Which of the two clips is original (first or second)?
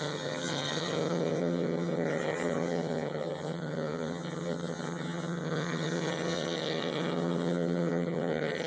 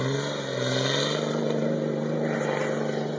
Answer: second